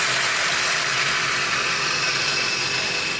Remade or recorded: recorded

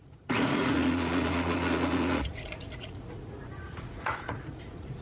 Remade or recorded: remade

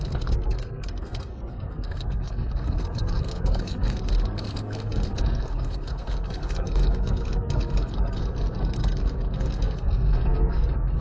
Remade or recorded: remade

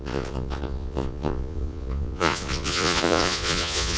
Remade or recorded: remade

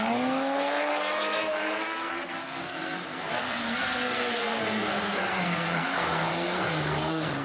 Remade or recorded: remade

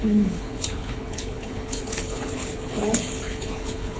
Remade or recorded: remade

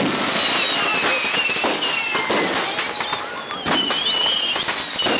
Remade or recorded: recorded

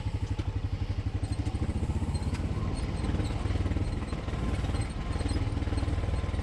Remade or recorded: recorded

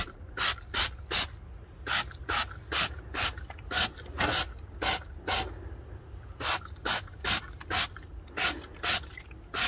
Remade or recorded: recorded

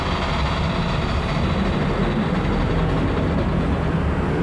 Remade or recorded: recorded